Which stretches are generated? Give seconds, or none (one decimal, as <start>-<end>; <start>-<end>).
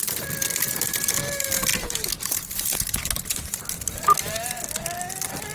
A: 1.7-4.6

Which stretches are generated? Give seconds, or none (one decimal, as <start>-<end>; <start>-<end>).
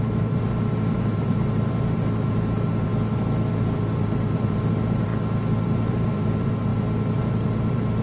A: 0.0-2.9; 3.5-5.1; 5.9-6.7; 7.2-8.0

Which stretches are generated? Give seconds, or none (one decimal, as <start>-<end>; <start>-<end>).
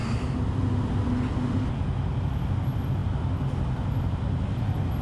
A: none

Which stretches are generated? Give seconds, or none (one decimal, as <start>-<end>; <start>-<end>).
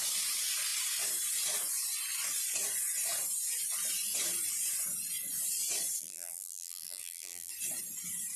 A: 6.0-7.5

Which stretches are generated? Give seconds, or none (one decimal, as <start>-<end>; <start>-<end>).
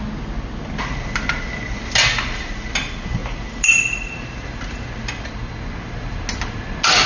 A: 3.2-5.3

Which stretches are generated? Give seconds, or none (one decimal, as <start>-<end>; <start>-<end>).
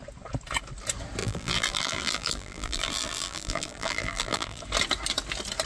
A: 1.2-4.6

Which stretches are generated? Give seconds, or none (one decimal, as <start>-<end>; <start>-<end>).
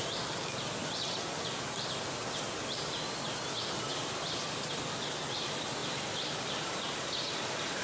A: 3.9-4.8; 5.8-7.8